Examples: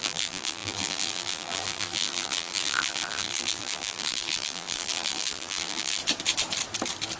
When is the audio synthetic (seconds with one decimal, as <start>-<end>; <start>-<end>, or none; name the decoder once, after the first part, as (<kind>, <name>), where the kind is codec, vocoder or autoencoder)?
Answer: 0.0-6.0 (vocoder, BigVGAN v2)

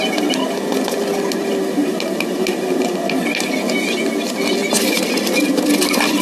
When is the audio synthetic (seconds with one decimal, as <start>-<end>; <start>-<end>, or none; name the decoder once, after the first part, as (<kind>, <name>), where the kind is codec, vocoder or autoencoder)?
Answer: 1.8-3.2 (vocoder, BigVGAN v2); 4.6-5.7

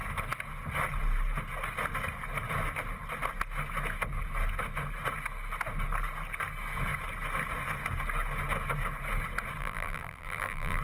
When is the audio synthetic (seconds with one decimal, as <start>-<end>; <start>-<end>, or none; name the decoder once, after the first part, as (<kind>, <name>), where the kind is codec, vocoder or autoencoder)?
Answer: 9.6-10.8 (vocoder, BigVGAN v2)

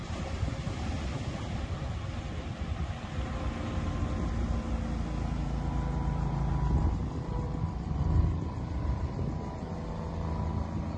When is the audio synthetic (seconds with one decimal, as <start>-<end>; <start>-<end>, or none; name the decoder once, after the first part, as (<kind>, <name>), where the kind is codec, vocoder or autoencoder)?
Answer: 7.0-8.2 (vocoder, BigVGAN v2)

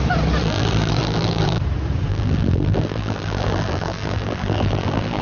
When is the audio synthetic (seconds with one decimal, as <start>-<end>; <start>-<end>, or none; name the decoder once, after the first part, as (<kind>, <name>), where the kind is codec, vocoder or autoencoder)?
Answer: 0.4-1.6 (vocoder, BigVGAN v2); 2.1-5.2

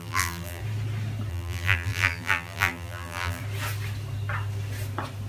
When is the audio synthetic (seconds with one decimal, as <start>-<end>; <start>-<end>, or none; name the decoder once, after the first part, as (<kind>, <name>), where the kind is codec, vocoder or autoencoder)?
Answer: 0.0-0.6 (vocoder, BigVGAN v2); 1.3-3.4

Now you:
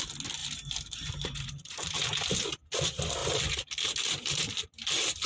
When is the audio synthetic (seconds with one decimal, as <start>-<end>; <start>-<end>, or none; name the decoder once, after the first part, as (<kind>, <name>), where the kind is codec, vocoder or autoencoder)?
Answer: 0.4-2.3 (vocoder, BigVGAN v2); 3.2-3.8